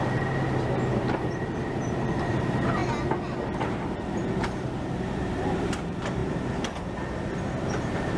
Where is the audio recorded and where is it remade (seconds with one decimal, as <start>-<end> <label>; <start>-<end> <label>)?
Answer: 0.0-2.8 remade; 2.8-3.6 recorded; 3.6-6.2 remade; 6.2-7.7 recorded; 7.7-8.2 remade